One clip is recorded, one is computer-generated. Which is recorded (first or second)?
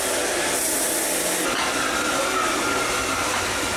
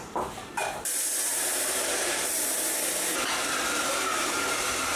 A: first